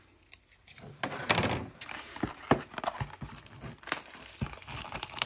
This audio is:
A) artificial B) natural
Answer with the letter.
B